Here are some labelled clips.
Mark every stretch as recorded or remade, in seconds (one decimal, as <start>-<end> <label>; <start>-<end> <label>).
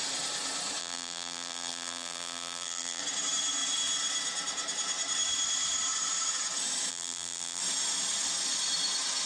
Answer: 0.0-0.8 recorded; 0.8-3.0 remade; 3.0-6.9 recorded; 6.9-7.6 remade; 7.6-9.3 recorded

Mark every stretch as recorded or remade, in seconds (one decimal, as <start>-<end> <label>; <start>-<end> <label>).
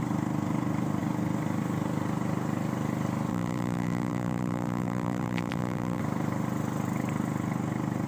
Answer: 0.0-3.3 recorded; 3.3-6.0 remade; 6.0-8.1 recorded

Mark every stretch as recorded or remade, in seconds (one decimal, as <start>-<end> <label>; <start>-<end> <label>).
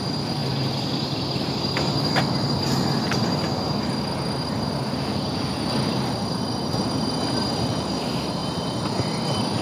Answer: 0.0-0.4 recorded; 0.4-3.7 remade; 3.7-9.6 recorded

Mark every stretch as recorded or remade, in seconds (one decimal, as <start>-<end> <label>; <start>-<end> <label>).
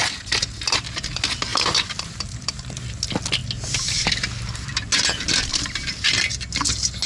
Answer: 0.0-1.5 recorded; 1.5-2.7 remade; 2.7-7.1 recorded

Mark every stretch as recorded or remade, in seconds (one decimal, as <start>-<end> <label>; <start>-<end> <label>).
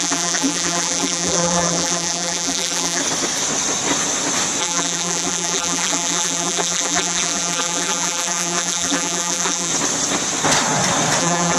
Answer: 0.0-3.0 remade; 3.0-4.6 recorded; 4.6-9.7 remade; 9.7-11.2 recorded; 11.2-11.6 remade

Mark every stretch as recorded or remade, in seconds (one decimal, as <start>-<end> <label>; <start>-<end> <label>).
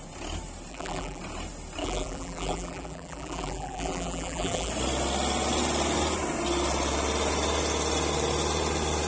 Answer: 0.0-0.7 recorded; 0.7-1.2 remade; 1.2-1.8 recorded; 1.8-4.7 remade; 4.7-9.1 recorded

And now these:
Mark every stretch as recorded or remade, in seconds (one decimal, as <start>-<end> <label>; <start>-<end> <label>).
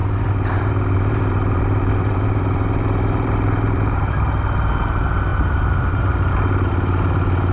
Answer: 0.0-4.3 remade; 4.3-5.3 recorded; 5.3-6.3 remade; 6.3-7.5 recorded